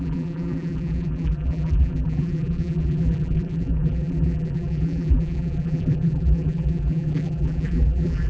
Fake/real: fake